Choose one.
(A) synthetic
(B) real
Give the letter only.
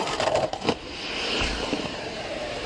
A